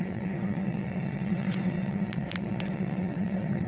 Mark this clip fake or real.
fake